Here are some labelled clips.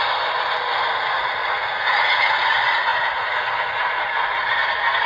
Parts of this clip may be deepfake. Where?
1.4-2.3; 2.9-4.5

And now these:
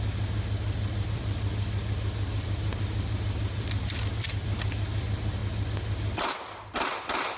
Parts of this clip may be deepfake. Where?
0.0-5.4

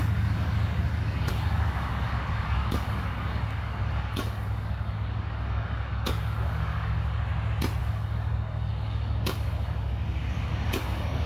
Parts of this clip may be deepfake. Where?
0.0-7.3; 7.8-11.3

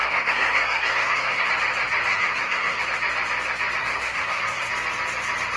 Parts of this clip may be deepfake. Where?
0.0-1.5; 2.1-2.8; 3.8-4.7

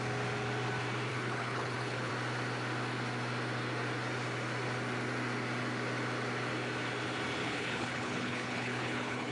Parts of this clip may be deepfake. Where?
1.1-2.1; 7.4-9.3

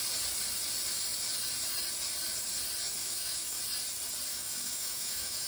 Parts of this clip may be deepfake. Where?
3.0-3.6; 4.3-5.5